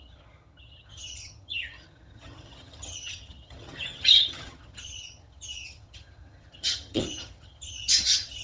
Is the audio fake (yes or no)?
yes